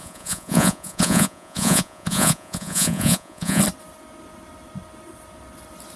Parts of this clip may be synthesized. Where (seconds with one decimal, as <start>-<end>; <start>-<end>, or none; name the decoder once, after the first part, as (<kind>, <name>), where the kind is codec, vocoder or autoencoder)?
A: 0.0-3.6 (vocoder, Vocos)